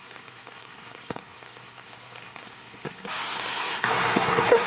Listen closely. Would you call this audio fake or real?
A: fake